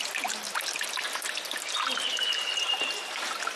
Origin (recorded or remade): recorded